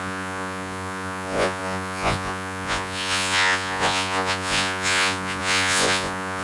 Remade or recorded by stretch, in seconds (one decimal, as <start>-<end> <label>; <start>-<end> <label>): 0.0-6.4 remade